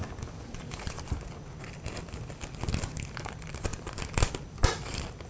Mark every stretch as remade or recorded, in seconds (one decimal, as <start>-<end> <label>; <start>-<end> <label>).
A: 0.0-0.4 recorded; 0.4-1.2 remade; 1.2-5.3 recorded